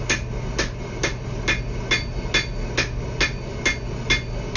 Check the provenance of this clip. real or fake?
real